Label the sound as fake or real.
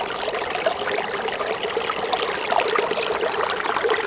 real